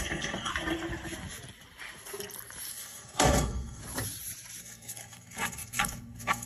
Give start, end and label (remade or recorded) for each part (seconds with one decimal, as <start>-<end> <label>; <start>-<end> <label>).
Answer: 0.0-0.5 remade; 0.5-2.7 recorded; 2.7-3.8 remade; 3.8-4.6 recorded; 4.6-6.5 remade